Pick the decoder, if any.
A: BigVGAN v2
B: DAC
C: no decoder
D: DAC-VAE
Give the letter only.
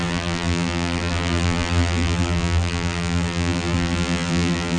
A